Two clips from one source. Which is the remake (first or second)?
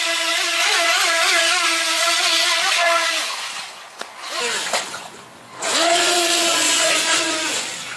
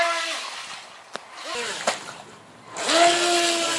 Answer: first